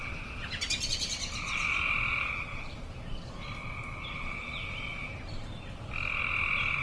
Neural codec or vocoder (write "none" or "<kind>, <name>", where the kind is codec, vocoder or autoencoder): none